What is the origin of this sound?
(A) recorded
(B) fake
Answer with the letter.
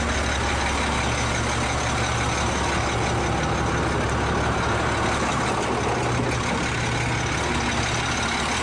A